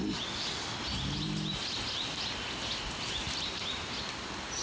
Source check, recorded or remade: recorded